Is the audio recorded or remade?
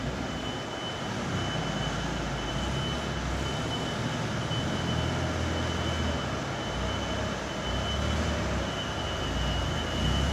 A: recorded